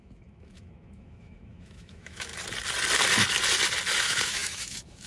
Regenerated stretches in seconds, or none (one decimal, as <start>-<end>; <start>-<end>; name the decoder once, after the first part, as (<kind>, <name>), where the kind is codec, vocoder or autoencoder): 0.0-2.3 (autoencoder, DAC-VAE); 4.0-5.1